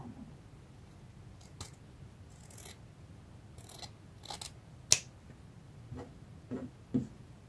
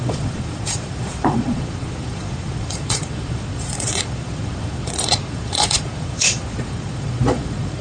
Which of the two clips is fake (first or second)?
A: second